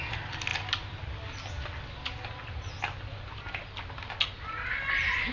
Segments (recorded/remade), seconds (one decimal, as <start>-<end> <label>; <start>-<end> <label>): 0.0-5.3 recorded